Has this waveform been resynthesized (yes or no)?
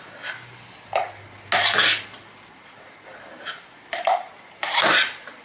no